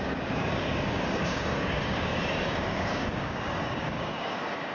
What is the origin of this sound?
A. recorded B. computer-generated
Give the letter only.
B